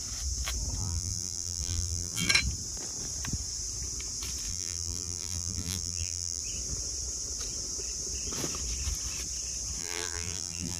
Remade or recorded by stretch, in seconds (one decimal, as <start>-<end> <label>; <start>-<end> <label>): 0.0-0.8 recorded; 0.8-2.3 remade; 2.3-4.5 recorded; 4.5-6.4 remade; 6.4-9.8 recorded; 9.8-10.8 remade